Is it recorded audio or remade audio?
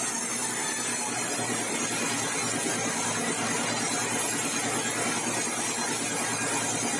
recorded